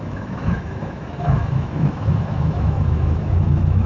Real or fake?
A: fake